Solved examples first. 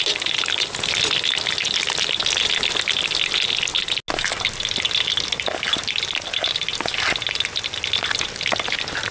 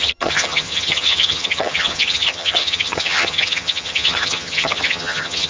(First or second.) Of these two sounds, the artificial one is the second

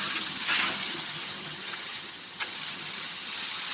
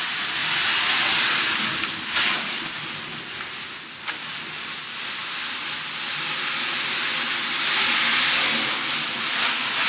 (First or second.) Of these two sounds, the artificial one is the first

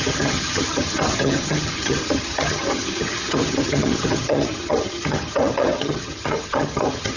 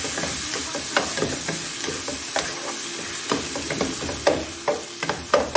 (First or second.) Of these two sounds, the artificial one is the first